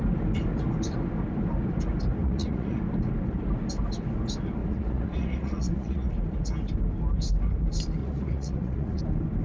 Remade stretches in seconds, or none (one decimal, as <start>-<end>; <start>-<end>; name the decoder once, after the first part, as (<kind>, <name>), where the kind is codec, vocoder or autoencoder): 2.2-2.8 (vocoder, Vocos); 4.6-6.1; 8.0-9.0